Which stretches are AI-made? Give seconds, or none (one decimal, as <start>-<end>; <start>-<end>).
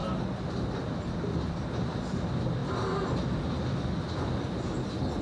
none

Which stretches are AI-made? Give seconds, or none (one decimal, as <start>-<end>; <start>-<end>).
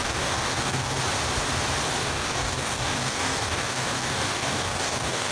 0.0-1.0; 2.0-5.3